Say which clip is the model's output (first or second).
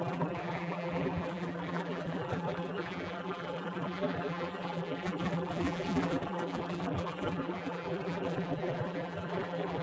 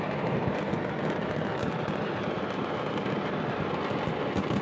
first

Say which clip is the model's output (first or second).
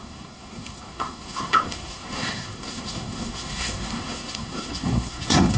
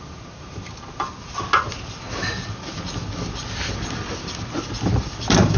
first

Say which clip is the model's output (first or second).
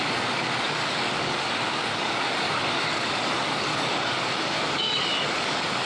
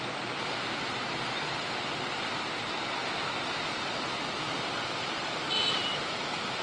first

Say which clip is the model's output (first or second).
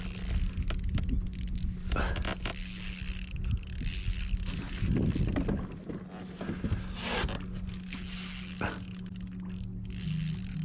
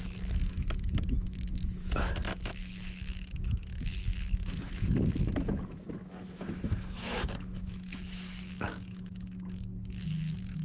second